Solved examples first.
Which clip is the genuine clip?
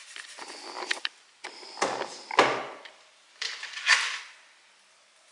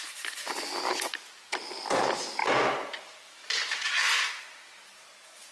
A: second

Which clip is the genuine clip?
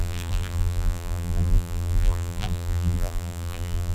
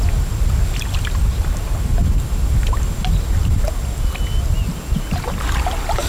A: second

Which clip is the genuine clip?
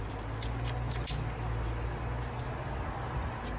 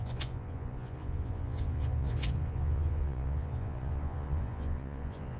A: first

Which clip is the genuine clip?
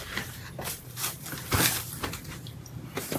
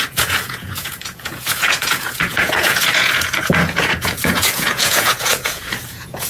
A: first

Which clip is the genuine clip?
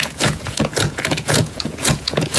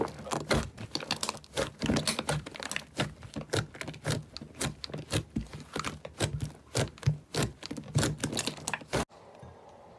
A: second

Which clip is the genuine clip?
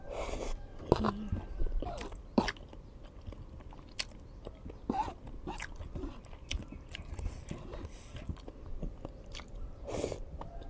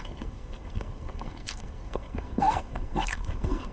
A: first